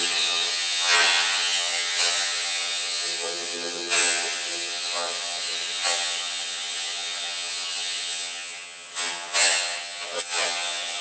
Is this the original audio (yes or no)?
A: no